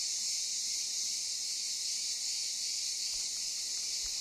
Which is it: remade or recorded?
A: recorded